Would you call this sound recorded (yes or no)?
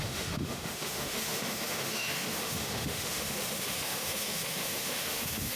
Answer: no